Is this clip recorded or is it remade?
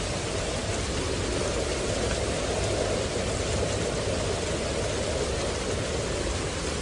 recorded